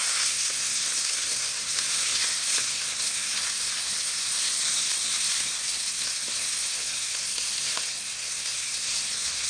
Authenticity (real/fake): fake